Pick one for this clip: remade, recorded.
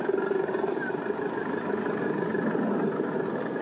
recorded